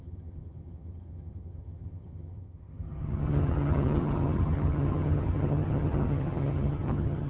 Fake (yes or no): yes